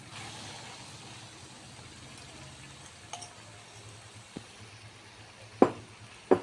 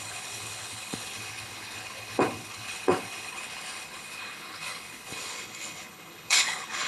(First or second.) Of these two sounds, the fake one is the second